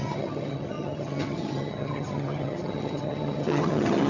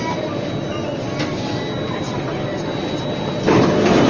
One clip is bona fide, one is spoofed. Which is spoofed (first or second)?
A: first